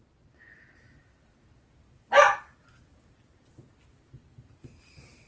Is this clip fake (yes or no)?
no